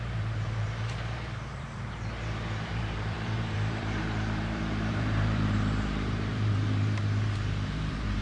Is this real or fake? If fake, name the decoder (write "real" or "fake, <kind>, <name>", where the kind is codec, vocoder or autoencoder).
fake, vocoder, BigVGAN v2